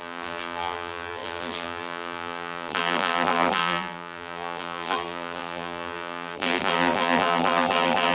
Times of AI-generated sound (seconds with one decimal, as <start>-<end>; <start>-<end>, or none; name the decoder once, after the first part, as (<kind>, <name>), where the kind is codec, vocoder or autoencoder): 0.0-8.1 (vocoder, BigVGAN v2)